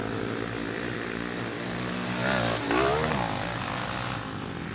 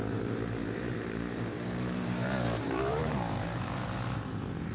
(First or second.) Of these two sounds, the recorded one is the first